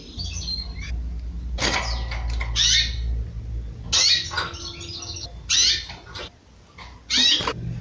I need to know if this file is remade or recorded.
recorded